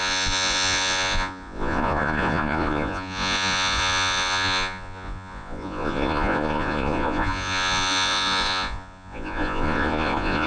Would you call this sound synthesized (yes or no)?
yes